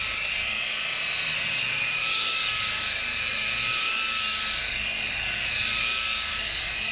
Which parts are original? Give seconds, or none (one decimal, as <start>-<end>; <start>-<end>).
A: 0.4-1.3